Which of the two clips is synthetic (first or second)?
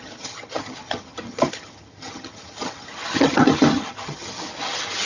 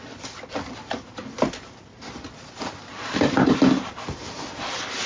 first